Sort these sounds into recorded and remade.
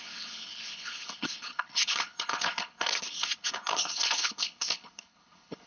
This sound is remade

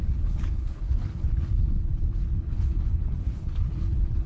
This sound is remade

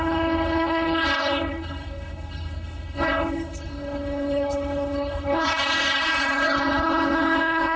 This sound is remade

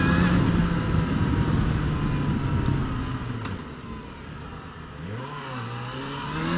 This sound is recorded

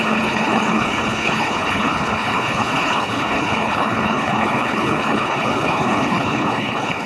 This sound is remade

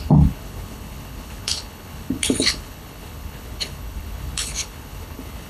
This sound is remade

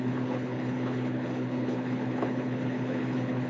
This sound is remade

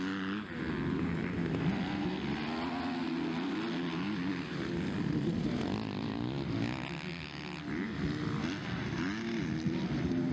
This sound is recorded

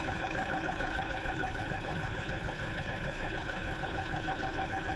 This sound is remade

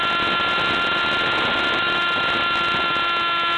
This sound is recorded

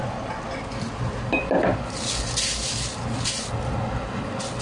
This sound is recorded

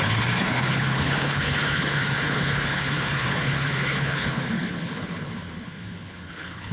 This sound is remade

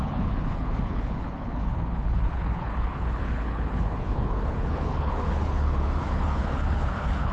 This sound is remade